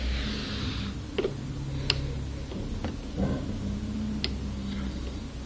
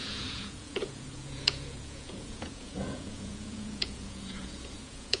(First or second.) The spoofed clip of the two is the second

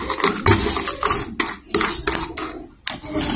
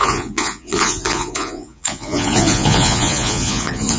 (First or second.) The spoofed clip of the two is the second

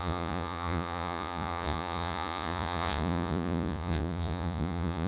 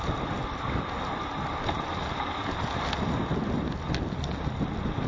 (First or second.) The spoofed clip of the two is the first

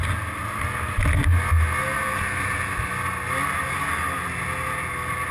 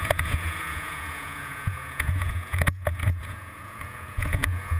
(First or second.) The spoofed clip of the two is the second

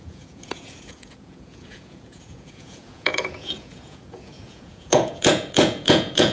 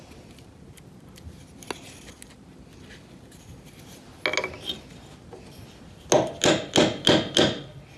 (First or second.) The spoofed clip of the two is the first